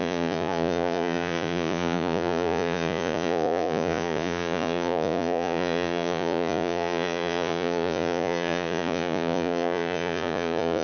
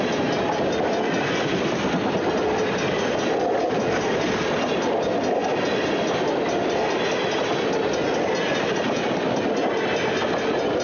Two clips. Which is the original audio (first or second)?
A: second